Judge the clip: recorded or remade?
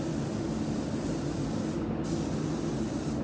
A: recorded